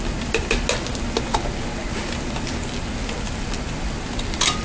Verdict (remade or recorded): recorded